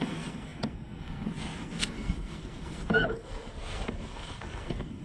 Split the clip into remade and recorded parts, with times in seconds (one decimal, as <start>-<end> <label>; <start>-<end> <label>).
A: 0.0-5.0 remade